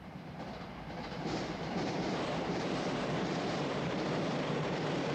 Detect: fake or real fake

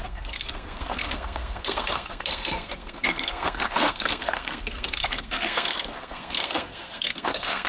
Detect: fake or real fake